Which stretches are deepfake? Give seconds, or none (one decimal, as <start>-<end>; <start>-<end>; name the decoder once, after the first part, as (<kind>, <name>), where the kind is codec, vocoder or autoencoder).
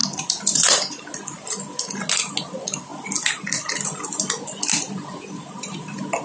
none